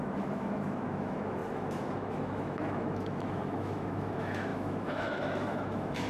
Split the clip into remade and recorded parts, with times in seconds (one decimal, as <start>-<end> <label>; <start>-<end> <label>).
0.0-6.1 remade